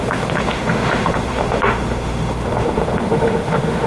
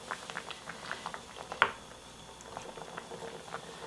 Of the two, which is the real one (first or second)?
second